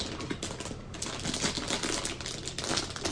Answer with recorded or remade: recorded